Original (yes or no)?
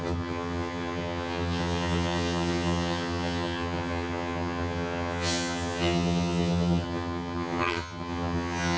no